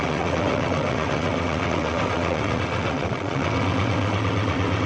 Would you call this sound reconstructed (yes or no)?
yes